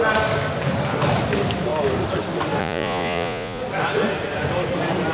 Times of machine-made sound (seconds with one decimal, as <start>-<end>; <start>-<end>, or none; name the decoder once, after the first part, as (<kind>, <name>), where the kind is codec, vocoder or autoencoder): 2.6-3.6 (vocoder, Vocos)